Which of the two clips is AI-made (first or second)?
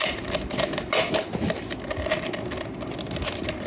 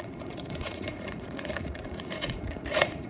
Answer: second